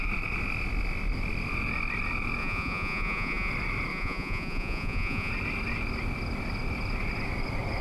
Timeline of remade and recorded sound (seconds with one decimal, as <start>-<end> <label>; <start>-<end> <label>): 0.0-2.4 recorded; 2.4-3.5 remade; 3.5-3.9 recorded; 3.9-5.3 remade; 5.3-7.8 recorded